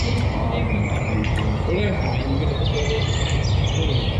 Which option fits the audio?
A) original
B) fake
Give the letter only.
A